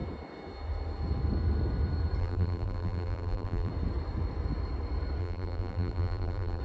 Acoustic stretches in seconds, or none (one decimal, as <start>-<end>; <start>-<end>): 0.0-2.2; 3.7-5.2